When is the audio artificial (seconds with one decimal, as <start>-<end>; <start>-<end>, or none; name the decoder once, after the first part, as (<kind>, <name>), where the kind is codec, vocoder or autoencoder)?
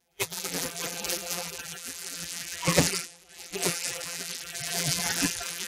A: 0.0-5.7 (vocoder, BigVGAN v2)